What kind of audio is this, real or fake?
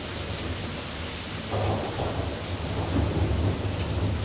real